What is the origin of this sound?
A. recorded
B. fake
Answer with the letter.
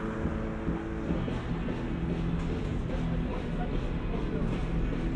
A